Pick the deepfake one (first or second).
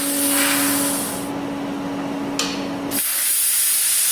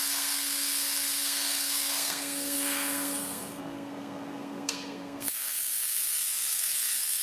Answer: second